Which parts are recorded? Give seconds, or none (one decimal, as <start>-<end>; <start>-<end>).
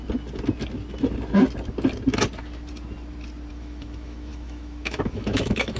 0.0-3.5